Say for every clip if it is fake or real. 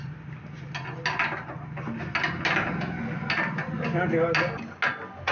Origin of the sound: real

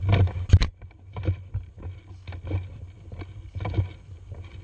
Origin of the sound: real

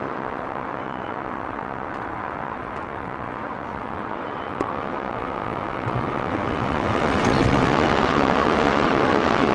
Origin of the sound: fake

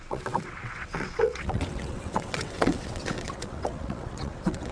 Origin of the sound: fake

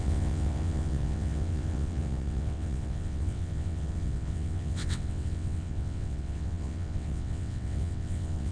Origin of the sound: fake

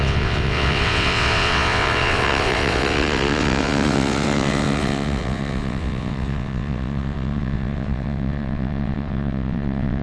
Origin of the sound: fake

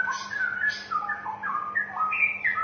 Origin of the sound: real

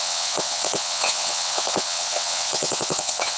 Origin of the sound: fake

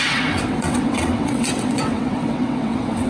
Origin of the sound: fake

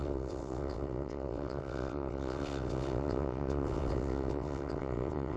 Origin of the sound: fake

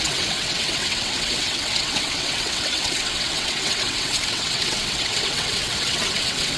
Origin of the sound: fake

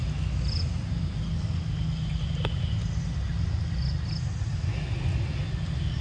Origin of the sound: real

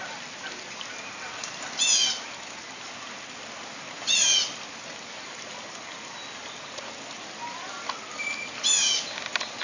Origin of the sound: real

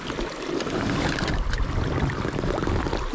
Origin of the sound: real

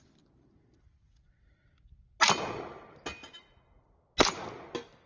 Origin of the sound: real